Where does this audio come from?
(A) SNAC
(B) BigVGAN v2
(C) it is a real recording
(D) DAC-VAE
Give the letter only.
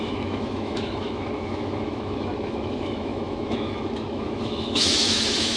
D